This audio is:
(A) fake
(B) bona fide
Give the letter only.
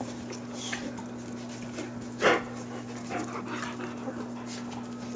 B